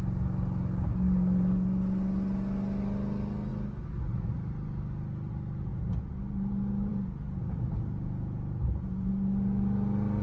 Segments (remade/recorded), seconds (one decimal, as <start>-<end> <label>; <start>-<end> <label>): 0.0-5.7 recorded; 5.7-6.2 remade; 6.2-6.9 recorded; 6.9-9.1 remade; 9.1-10.2 recorded